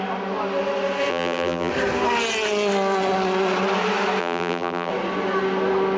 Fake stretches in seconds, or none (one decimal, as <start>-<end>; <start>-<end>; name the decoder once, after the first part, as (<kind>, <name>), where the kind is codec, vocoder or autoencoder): 1.1-1.7 (vocoder, BigVGAN v2); 4.2-4.9